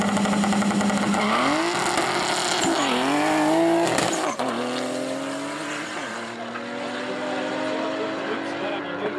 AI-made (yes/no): no